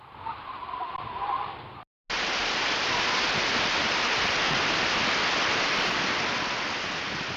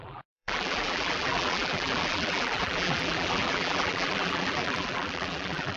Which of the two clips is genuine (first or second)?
first